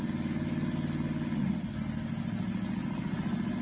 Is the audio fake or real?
real